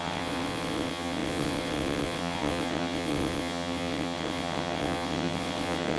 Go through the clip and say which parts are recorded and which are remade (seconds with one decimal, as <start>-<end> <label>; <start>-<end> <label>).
0.0-6.0 remade

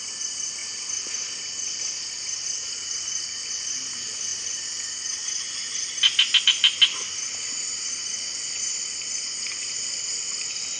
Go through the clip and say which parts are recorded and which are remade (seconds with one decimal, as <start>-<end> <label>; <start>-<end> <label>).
0.0-10.8 recorded

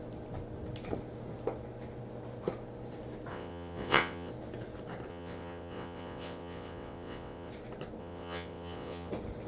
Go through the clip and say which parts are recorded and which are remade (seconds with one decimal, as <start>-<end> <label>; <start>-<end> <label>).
0.0-3.3 recorded; 3.3-4.3 remade; 4.3-5.1 recorded; 5.1-7.5 remade; 7.5-8.0 recorded; 8.0-9.1 remade; 9.1-9.5 recorded

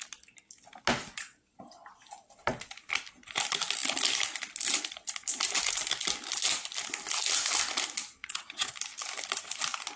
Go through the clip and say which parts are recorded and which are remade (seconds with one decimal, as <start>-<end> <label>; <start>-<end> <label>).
0.0-8.2 recorded; 8.2-8.7 remade; 8.7-10.0 recorded

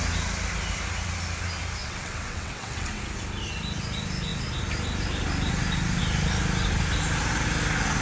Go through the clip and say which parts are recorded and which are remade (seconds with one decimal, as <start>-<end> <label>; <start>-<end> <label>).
0.0-1.8 recorded; 1.8-3.0 remade; 3.0-8.0 recorded

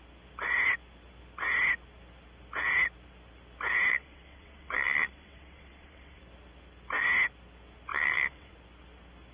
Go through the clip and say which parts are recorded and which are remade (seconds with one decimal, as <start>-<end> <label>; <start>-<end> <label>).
0.0-3.9 recorded; 3.9-6.2 remade; 6.2-7.9 recorded; 7.9-8.5 remade; 8.5-9.3 recorded

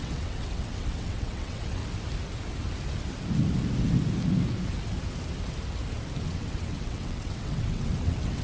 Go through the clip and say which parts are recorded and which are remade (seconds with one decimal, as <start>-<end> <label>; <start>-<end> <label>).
0.0-1.8 remade; 1.8-6.2 recorded; 6.2-8.4 remade